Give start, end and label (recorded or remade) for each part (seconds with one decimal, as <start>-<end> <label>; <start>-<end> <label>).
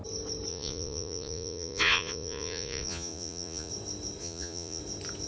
0.0-0.5 recorded; 0.5-3.7 remade; 3.7-4.2 recorded; 4.2-4.8 remade; 4.8-5.3 recorded